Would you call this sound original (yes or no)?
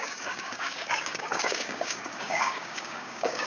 no